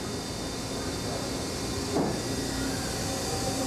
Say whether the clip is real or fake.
real